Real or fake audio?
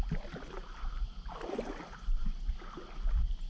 real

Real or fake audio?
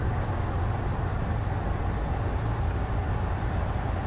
real